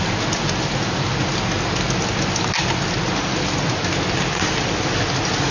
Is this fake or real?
real